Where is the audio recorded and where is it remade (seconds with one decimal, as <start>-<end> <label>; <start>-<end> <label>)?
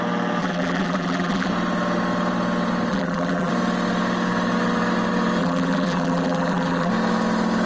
0.0-0.4 recorded; 0.4-1.5 remade; 1.5-2.9 recorded; 2.9-3.5 remade; 3.5-5.4 recorded; 5.4-6.9 remade; 6.9-7.7 recorded